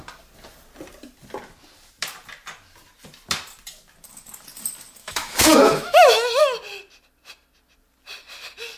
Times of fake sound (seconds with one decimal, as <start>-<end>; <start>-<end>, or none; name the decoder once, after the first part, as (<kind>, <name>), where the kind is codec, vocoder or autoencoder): 5.0-6.4 (autoencoder, DAC-VAE)

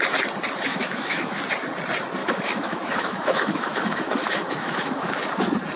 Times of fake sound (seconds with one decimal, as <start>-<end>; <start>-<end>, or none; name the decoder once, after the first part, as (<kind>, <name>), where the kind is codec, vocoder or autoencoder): 0.7-1.4 (autoencoder, DAC-VAE); 2.2-5.1